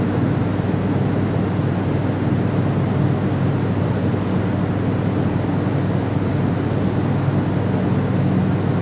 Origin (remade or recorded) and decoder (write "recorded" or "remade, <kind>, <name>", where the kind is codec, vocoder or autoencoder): recorded